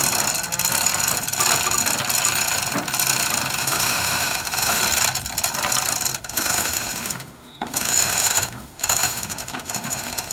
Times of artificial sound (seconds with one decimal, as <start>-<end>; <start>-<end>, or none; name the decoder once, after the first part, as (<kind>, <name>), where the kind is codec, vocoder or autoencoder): 3.6-4.8 (autoencoder, DAC-VAE); 6.2-10.3